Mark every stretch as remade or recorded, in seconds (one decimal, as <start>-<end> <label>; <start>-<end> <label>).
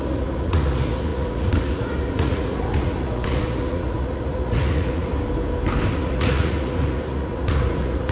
0.0-5.1 remade; 5.1-5.9 recorded; 5.9-8.1 remade